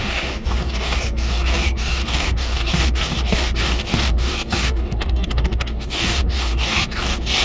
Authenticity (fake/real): fake